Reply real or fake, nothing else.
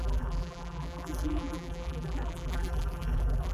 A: fake